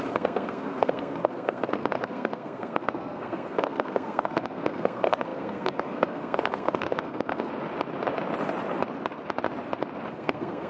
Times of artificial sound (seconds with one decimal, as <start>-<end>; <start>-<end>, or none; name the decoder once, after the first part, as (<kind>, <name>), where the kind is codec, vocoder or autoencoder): 0.0-7.5 (codec, SNAC); 10.1-10.7